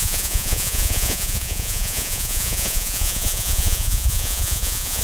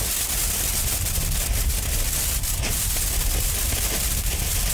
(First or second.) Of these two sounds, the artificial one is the first